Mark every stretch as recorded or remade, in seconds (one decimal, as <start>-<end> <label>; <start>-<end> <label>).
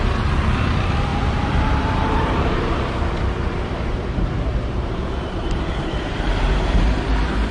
0.0-1.1 recorded; 1.1-3.1 remade; 3.1-4.5 recorded; 4.5-7.1 remade; 7.1-7.5 recorded